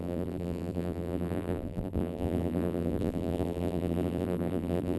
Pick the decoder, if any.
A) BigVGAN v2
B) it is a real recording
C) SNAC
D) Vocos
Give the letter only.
A